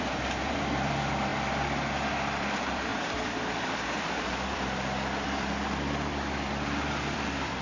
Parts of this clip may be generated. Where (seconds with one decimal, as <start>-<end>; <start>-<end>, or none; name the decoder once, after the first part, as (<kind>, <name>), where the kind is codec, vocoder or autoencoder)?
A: 0.0-1.3 (vocoder, BigVGAN v2); 2.1-7.6